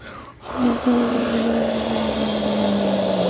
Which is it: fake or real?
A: real